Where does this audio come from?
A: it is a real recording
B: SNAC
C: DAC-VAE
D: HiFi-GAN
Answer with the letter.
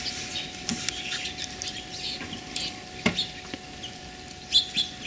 A